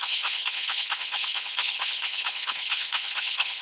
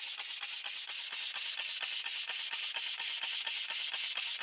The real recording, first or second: second